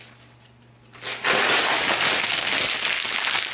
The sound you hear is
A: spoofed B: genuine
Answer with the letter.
B